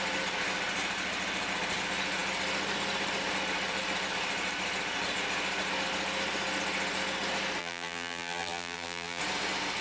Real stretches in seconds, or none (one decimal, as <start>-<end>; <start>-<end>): 0.0-7.6; 9.2-9.8